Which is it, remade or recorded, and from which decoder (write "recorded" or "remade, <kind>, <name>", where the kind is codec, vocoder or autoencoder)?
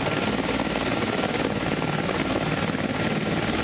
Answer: recorded